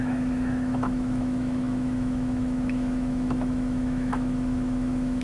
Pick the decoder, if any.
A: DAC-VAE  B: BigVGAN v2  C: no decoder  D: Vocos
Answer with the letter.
A